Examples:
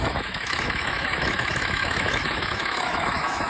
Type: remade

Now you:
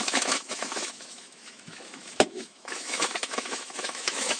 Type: remade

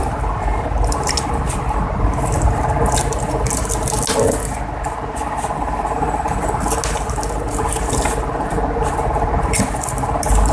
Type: recorded